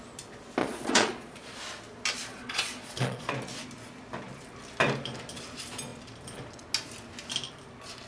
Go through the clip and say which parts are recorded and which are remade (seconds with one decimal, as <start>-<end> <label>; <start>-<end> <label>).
0.0-0.6 recorded; 0.6-1.6 remade; 1.6-2.3 recorded; 2.3-3.3 remade; 3.3-8.1 recorded